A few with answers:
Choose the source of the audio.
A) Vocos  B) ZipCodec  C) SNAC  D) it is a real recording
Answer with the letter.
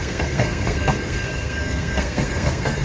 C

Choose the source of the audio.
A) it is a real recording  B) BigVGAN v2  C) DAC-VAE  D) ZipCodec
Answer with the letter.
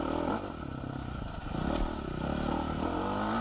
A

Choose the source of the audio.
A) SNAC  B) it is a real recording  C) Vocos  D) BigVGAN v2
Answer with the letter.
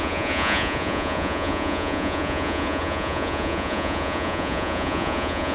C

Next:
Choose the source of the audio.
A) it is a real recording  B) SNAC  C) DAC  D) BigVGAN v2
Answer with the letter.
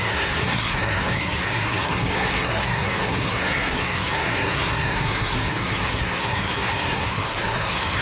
B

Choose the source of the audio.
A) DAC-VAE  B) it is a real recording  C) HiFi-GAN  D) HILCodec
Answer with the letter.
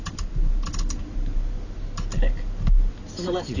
B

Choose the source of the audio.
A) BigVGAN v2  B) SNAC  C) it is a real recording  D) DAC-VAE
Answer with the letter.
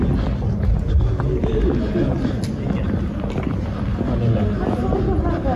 C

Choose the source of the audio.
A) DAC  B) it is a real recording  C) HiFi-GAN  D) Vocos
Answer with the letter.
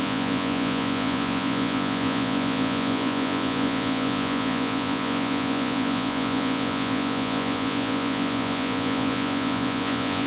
D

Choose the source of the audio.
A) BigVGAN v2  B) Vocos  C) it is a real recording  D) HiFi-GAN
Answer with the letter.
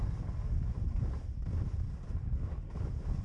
C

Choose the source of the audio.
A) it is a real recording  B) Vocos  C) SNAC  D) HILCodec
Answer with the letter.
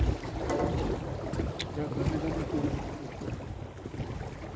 A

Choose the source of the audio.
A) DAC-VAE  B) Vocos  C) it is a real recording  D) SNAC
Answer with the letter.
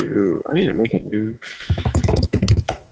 A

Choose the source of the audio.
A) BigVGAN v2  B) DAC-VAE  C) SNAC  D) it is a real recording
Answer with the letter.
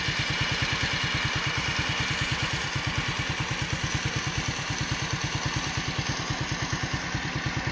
D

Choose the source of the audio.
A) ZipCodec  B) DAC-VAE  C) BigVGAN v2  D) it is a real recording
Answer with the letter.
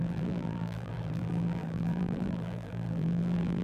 C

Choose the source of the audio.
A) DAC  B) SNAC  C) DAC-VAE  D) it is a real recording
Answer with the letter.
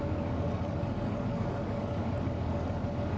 A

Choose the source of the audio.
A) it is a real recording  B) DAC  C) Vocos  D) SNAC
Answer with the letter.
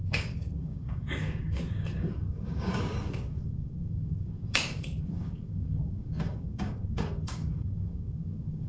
B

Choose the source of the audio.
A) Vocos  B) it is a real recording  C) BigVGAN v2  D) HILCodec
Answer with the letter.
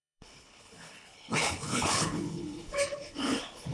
D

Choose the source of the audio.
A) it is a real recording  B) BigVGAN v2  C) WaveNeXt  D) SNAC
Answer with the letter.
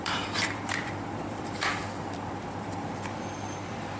B